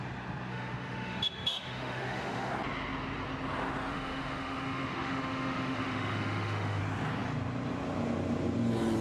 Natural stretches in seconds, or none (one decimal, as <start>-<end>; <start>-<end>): 0.0-0.5; 2.5-3.9; 6.8-9.0